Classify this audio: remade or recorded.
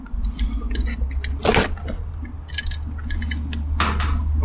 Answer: recorded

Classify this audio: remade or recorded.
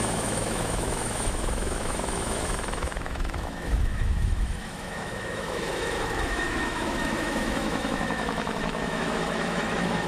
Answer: remade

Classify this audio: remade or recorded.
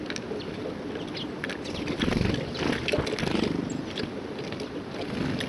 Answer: recorded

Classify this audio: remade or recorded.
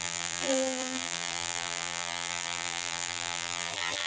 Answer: remade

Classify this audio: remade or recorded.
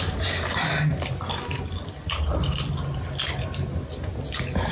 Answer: recorded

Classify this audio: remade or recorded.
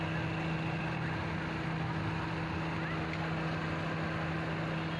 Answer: recorded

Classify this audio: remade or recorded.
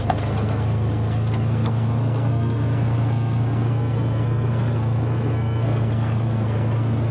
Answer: remade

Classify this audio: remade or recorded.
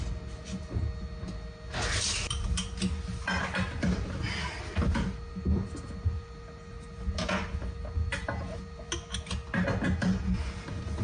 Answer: recorded